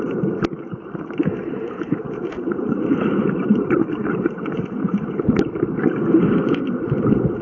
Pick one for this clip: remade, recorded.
recorded